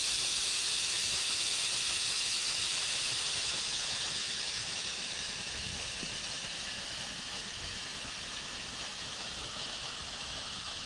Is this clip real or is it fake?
fake